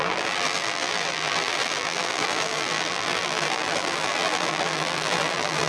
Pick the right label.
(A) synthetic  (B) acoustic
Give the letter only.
A